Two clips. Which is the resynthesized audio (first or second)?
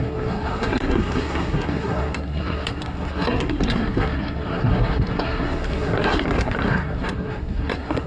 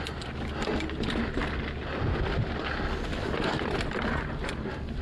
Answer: first